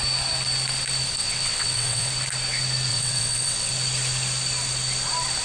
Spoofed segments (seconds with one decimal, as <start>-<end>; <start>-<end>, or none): 1.2-2.1; 2.9-3.7